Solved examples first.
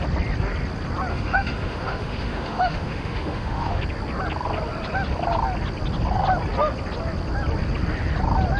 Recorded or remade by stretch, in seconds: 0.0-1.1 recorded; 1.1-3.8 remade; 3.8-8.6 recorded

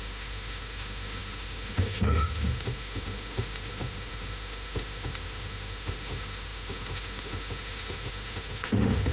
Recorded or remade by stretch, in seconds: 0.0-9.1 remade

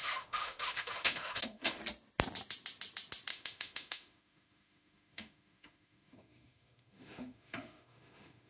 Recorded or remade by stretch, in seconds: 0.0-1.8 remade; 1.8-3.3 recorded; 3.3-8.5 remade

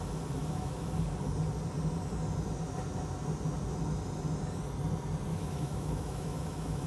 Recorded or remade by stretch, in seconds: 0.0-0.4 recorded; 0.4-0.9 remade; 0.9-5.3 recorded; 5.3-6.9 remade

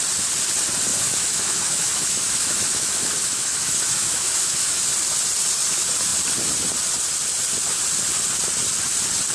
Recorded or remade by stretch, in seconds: 0.0-0.9 recorded; 0.9-4.8 remade; 4.8-9.3 recorded

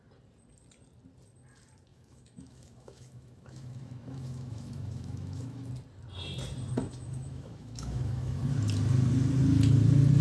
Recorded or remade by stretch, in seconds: 0.0-1.9 recorded; 1.9-5.7 remade; 5.7-6.8 recorded; 6.8-8.4 remade; 8.4-10.2 recorded

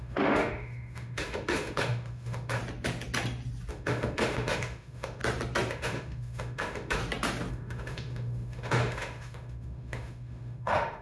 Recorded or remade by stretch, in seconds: 0.0-2.6 remade; 2.6-3.7 recorded; 3.7-5.2 remade; 5.2-5.7 recorded; 5.7-7.0 remade; 7.0-7.5 recorded; 7.5-11.0 remade